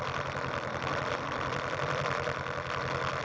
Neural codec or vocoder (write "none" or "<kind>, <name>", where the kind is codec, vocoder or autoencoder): vocoder, BigVGAN v2